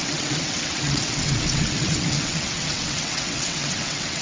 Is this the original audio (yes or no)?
no